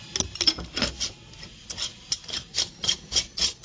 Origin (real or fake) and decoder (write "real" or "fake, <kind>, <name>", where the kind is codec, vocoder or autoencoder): real